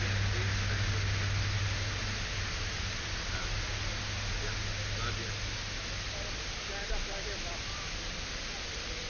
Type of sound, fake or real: real